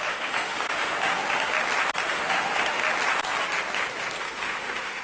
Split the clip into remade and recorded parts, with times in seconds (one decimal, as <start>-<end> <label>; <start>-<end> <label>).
0.0-1.1 remade; 1.1-2.1 recorded; 2.1-2.8 remade; 2.8-4.2 recorded; 4.2-5.0 remade